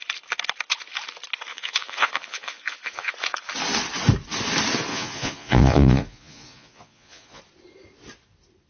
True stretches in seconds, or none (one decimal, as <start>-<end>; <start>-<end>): 0.0-1.5; 3.1-4.9; 7.4-8.7